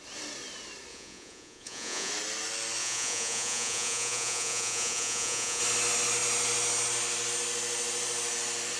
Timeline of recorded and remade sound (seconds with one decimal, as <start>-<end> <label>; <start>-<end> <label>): 0.0-0.9 recorded; 0.9-2.1 remade; 2.1-2.8 recorded; 2.8-5.6 remade; 5.6-8.8 recorded